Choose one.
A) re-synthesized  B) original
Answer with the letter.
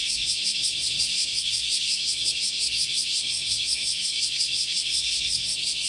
A